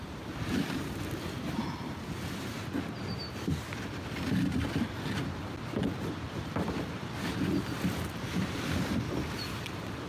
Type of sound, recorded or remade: remade